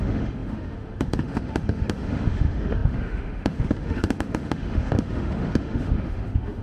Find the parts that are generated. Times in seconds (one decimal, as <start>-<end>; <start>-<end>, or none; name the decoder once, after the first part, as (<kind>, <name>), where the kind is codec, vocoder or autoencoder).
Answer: 0.0-6.6 (autoencoder, DAC-VAE)